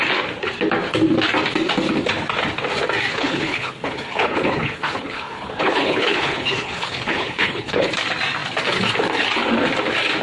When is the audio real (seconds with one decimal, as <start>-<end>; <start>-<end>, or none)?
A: 0.0-3.1; 7.9-10.2